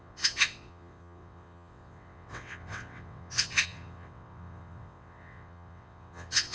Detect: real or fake fake